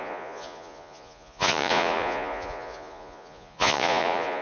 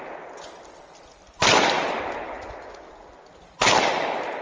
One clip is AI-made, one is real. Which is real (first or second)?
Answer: second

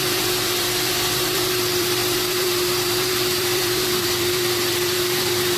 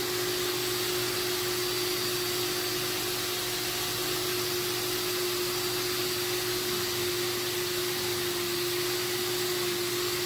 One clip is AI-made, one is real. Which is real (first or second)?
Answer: second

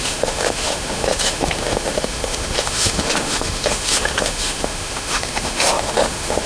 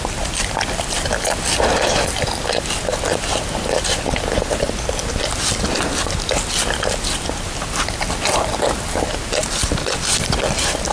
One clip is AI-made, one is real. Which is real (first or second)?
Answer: second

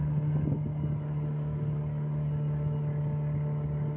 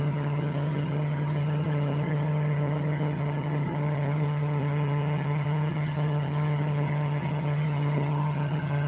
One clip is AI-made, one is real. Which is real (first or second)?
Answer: first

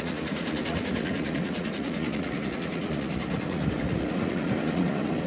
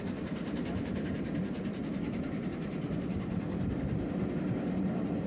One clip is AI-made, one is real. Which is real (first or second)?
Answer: second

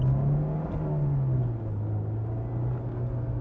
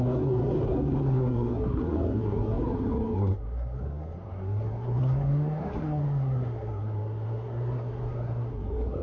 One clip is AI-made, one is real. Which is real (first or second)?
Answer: first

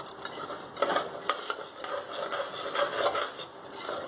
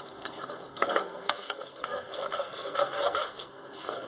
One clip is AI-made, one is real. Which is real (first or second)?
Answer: first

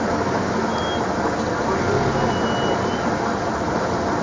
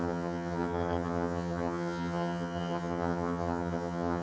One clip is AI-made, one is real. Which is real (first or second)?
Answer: first